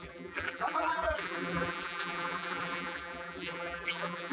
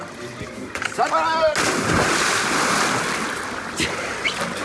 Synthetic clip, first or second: first